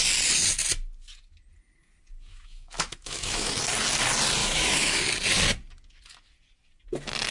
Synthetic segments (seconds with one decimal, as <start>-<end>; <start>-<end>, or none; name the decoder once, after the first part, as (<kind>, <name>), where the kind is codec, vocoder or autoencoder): 2.3-3.6 (autoencoder, DAC-VAE); 4.4-5.0